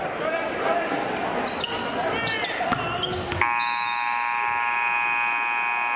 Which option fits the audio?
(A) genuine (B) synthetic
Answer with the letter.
A